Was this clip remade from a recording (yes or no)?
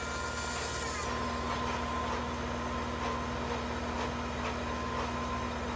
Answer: no